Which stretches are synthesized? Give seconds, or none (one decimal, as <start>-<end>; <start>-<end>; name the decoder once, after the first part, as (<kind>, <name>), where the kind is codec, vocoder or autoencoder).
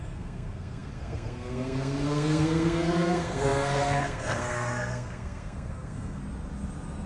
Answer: 0.0-6.2 (codec, SNAC)